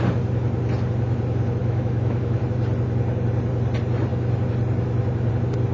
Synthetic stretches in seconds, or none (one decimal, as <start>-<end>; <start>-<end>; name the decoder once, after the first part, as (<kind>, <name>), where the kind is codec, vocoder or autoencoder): 1.6-2.4 (autoencoder, DAC-VAE)